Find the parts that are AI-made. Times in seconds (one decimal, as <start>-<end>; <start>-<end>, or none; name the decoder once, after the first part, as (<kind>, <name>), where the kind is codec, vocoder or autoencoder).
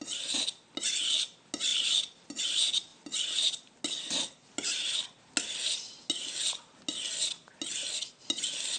none